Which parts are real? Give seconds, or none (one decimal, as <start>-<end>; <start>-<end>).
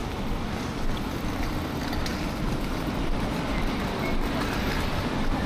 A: 0.5-2.1; 3.6-5.5